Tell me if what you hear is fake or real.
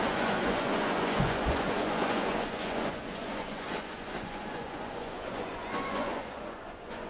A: fake